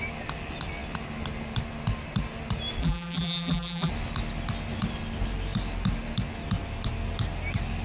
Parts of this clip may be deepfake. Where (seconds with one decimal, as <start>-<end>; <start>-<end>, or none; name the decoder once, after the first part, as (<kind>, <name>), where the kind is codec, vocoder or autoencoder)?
2.8-3.9 (vocoder, BigVGAN v2)